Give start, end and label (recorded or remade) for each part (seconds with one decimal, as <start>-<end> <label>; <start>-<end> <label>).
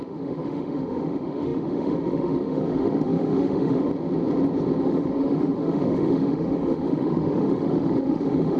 0.0-3.9 remade; 3.9-4.8 recorded; 4.8-8.6 remade